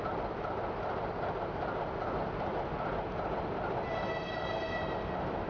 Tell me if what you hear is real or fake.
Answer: real